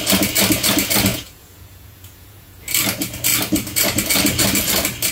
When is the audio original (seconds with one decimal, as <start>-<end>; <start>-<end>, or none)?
0.0-1.1; 2.6-5.1